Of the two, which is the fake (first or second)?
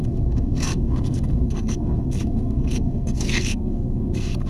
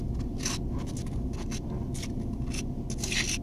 first